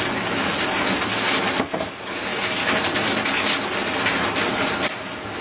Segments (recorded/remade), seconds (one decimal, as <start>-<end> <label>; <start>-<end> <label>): 0.0-0.5 remade; 0.5-1.8 recorded; 1.8-2.3 remade; 2.3-5.0 recorded; 5.0-5.4 remade